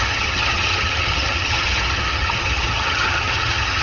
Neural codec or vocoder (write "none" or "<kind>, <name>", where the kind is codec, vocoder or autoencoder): vocoder, HiFi-GAN